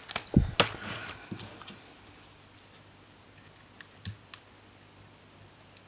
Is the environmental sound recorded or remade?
recorded